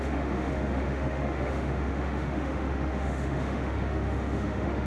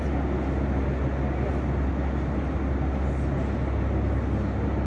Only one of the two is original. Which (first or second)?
second